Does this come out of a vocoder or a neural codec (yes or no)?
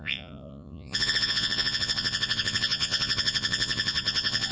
yes